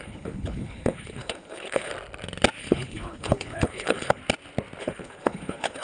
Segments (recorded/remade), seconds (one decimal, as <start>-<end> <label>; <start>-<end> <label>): 0.0-1.9 remade; 1.9-2.6 recorded; 2.6-4.2 remade; 4.2-4.8 recorded; 4.8-5.8 remade